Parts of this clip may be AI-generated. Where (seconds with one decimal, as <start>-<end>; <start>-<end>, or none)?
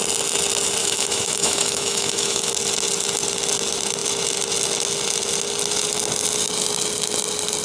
0.8-2.5